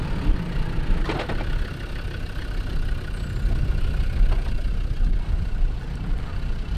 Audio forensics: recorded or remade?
recorded